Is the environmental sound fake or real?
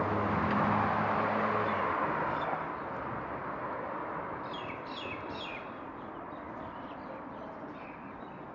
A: real